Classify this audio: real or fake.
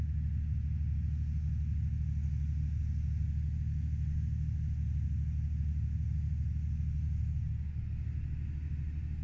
real